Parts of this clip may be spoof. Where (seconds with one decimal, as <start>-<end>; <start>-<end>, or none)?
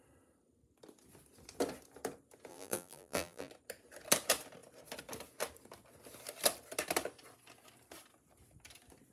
2.5-3.5